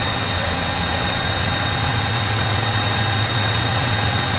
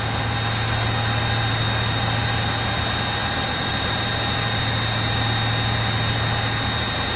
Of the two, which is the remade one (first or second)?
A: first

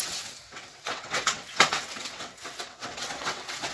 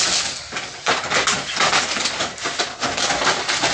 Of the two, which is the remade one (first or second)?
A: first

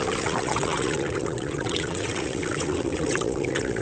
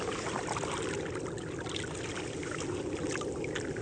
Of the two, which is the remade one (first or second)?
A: first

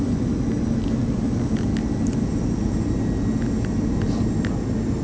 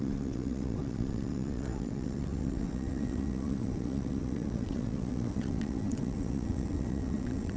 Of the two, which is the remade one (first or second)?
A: second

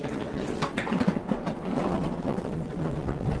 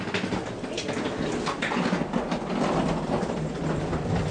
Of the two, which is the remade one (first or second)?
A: first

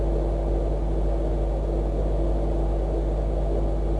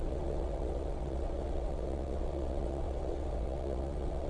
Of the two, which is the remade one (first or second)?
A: second